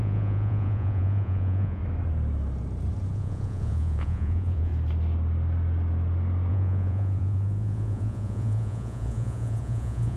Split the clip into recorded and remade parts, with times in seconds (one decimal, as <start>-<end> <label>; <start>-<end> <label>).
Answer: 0.0-1.8 remade; 1.8-3.1 recorded; 3.1-4.7 remade; 4.7-6.5 recorded; 6.5-10.2 remade